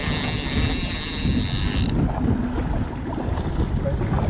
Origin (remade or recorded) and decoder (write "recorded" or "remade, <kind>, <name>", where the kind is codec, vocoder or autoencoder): recorded